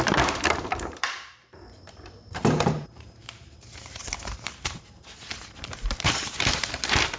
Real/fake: fake